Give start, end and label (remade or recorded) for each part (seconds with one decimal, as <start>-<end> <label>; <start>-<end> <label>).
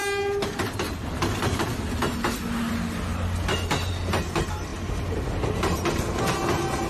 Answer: 0.0-6.9 recorded